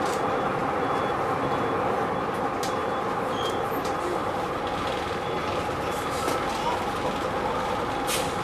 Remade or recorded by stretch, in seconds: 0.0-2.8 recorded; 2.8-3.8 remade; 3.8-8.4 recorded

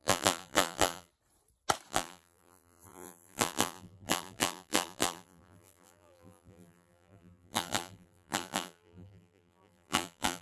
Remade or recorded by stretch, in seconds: 0.0-1.1 remade; 1.1-1.9 recorded; 1.9-10.4 remade

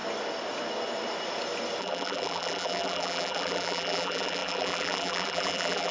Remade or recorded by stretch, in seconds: 0.0-1.8 recorded; 1.8-5.9 remade

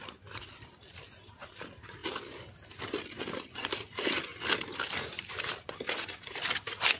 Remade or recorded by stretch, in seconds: 0.0-2.0 remade; 2.0-2.8 recorded; 2.8-7.0 remade